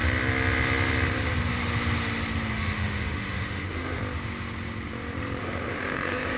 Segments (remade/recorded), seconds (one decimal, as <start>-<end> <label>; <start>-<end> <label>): 0.0-2.5 recorded; 2.5-4.0 remade; 4.0-5.4 recorded; 5.4-6.4 remade

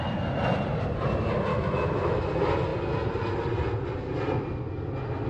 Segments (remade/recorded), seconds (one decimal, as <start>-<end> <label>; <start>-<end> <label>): 0.0-1.5 recorded; 1.5-2.2 remade; 2.2-5.3 recorded

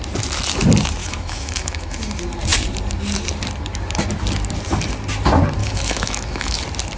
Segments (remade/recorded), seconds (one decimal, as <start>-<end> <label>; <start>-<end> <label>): 0.0-1.0 recorded; 1.0-2.0 remade; 2.0-5.6 recorded; 5.6-6.6 remade; 6.6-7.0 recorded

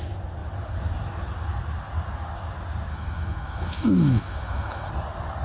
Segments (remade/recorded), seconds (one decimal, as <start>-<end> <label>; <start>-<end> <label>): 0.0-2.9 recorded; 2.9-4.9 remade; 4.9-5.4 recorded

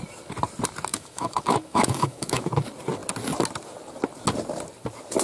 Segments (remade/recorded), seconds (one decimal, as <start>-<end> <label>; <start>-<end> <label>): 0.0-0.9 recorded; 0.9-2.5 remade; 2.5-5.2 recorded

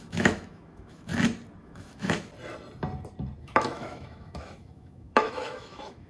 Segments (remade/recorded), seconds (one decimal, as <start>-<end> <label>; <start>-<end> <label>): 0.0-1.1 remade; 1.1-1.6 recorded; 1.6-2.3 remade; 2.3-3.4 recorded; 3.4-6.1 remade

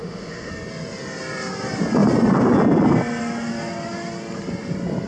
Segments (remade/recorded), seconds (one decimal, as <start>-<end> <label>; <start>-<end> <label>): 0.0-0.5 remade; 0.5-5.1 recorded

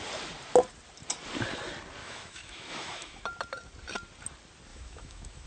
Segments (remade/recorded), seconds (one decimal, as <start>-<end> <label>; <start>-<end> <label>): 0.0-2.0 recorded; 2.0-3.2 remade; 3.2-4.7 recorded; 4.7-5.5 remade